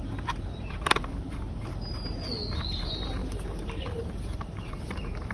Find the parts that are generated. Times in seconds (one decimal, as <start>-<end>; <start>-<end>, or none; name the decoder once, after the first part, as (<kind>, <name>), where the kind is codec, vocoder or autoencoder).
0.0-1.7 (vocoder, BigVGAN v2); 2.8-5.3

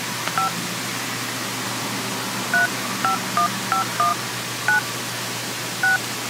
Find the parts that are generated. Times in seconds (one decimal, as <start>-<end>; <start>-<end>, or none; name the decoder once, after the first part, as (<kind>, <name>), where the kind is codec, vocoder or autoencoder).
none

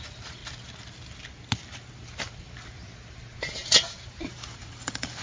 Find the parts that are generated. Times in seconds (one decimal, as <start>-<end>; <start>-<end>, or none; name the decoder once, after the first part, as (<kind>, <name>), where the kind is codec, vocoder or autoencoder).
0.0-0.4 (vocoder, BigVGAN v2); 3.5-5.2

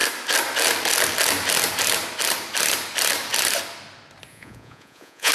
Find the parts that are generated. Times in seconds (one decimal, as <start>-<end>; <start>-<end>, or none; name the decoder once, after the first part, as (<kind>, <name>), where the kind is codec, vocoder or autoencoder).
4.3-5.3 (vocoder, Vocos)

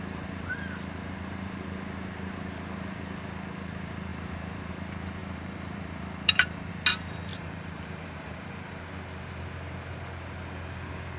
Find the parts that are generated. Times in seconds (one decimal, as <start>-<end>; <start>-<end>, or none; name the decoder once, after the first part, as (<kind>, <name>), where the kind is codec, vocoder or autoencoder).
4.1-4.7 (vocoder, BigVGAN v2); 5.2-6.7; 7.3-8.8

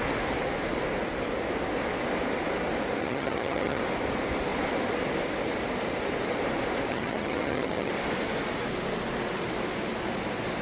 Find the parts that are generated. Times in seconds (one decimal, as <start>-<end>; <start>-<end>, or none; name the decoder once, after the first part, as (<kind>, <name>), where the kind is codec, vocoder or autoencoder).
3.0-3.8 (vocoder, HiFi-GAN); 6.9-7.9

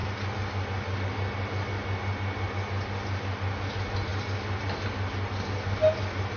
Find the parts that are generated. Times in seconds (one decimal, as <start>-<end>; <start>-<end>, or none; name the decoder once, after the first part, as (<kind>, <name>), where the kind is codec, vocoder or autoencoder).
none